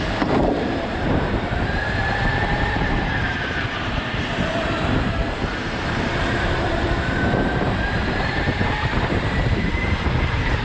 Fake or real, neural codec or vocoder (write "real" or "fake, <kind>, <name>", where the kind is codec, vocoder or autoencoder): fake, vocoder, BigVGAN v2